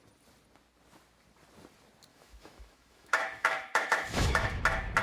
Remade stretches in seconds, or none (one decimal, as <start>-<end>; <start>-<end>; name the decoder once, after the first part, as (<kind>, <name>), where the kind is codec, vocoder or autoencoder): 2.1-4.6 (autoencoder, DAC-VAE)